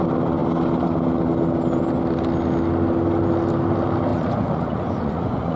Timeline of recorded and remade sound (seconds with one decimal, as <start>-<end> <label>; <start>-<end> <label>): 0.0-4.1 recorded; 4.1-5.6 remade